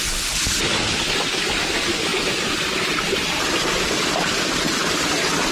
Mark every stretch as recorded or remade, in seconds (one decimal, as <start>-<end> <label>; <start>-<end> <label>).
0.0-2.1 recorded; 2.1-5.1 remade; 5.1-5.5 recorded